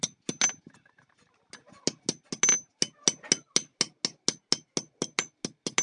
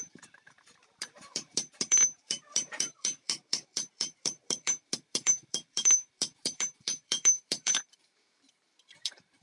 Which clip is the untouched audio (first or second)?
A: first